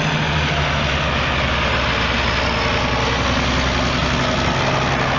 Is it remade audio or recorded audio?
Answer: recorded